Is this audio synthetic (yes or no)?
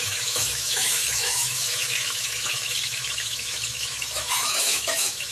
yes